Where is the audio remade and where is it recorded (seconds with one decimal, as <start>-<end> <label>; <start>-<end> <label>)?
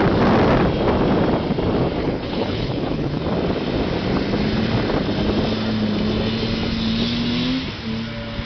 0.0-2.0 recorded; 2.0-3.2 remade; 3.2-8.5 recorded